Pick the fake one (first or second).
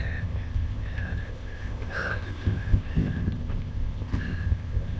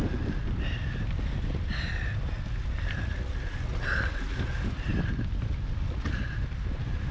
first